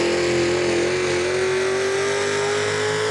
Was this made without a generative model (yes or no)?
yes